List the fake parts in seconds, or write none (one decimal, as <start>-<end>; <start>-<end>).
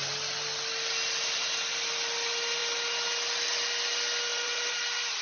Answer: 4.3-5.2